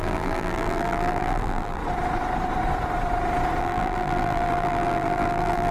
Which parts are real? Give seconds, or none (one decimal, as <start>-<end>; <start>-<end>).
1.8-3.6